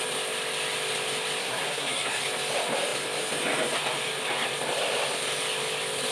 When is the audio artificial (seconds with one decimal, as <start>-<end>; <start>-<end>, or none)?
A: 1.4-2.2